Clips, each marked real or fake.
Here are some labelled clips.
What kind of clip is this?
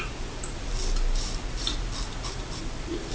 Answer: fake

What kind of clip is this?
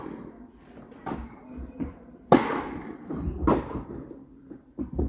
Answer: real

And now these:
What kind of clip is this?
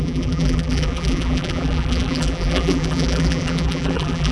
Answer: fake